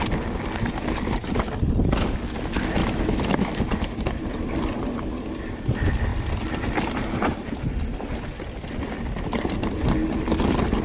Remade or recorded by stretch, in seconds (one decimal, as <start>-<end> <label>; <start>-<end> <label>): 0.0-2.8 recorded; 2.8-4.2 remade; 4.2-10.8 recorded